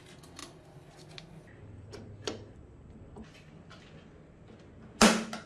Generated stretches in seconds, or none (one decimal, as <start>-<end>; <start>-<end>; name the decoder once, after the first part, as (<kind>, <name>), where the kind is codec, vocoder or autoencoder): none